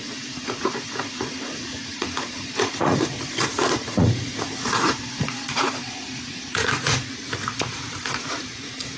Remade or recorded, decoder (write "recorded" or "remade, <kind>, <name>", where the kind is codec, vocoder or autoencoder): remade, vocoder, Vocos